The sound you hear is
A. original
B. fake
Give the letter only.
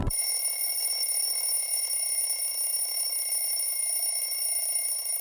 B